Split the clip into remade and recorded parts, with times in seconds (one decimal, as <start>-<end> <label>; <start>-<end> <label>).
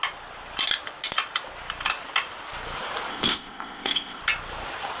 0.0-3.1 recorded; 3.1-4.2 remade; 4.2-5.0 recorded